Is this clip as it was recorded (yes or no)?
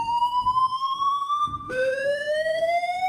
no